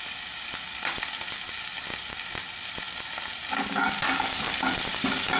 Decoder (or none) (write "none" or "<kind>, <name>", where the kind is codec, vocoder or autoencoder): none